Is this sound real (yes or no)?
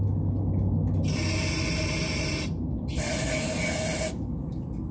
yes